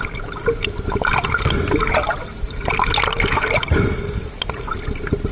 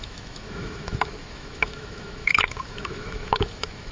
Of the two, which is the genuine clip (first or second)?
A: first